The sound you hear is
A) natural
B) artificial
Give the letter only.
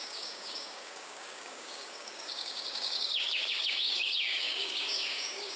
B